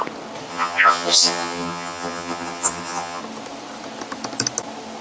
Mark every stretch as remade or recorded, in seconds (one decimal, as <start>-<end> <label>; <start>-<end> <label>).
0.0-0.5 recorded; 0.5-3.2 remade; 3.2-5.0 recorded